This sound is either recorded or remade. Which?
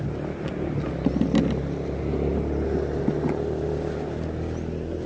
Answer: recorded